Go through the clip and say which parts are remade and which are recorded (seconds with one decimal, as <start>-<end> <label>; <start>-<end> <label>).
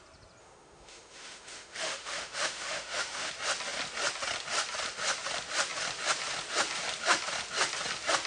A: 0.0-0.4 recorded; 0.4-3.3 remade; 3.3-8.3 recorded